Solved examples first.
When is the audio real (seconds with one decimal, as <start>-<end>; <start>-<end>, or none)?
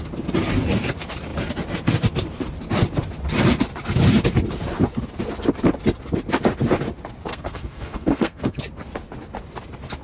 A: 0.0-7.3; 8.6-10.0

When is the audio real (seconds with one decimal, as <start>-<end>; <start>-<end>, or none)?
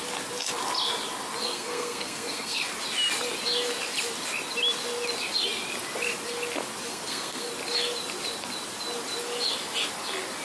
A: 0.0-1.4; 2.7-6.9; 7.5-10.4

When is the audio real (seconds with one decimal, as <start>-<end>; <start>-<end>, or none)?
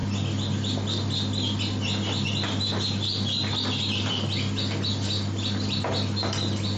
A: 0.0-6.8